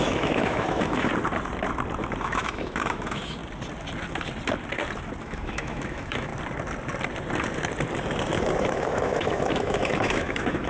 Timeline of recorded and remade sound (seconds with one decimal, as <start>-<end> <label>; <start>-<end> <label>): 0.0-1.1 remade; 1.1-2.2 recorded; 2.2-3.4 remade; 3.4-5.2 recorded; 5.2-6.3 remade; 6.3-8.6 recorded; 8.6-10.7 remade